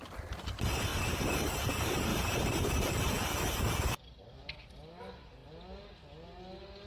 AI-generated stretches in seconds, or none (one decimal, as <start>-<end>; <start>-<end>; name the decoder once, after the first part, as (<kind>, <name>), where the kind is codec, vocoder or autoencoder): 0.9-1.5 (vocoder, BigVGAN v2); 2.1-2.7